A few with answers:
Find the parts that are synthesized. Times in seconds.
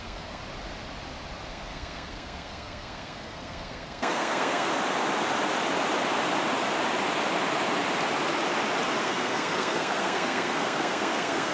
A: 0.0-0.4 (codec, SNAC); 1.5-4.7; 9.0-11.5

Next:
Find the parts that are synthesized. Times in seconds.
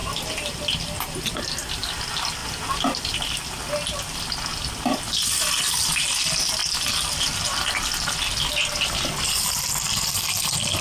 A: none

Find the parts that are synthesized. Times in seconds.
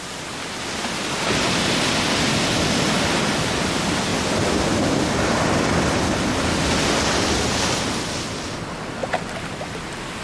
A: 4.1-4.7 (vocoder, BigVGAN v2); 9.0-10.2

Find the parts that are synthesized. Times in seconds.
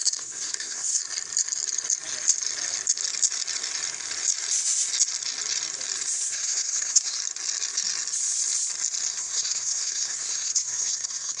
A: 0.0-1.0 (codec, SNAC); 6.3-7.2; 9.1-11.4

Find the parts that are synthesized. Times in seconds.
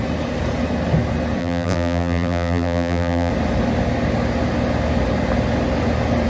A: 1.4-3.3 (vocoder, BigVGAN v2)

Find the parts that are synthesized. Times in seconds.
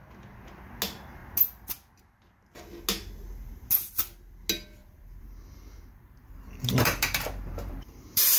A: 4.8-8.4 (vocoder, BigVGAN v2)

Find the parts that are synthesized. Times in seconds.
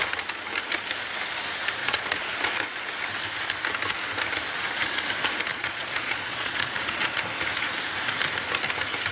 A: 1.8-2.3 (vocoder, Vocos); 5.5-7.2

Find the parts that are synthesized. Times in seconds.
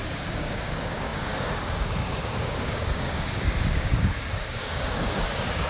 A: 0.0-5.7 (codec, DAC)